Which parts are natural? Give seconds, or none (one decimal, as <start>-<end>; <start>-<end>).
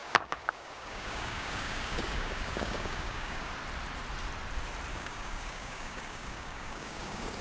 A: 3.5-4.9